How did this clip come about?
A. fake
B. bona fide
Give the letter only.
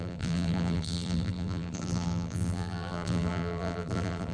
A